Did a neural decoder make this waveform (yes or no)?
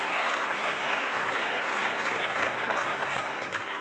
yes